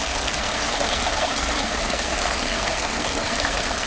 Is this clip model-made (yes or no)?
yes